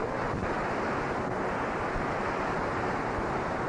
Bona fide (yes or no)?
yes